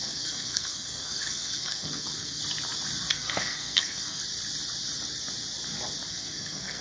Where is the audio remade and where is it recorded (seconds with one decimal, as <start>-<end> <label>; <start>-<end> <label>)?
0.0-2.4 remade; 2.4-3.1 recorded; 3.1-4.2 remade; 4.2-6.1 recorded; 6.1-6.8 remade